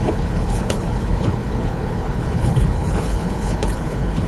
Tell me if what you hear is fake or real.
fake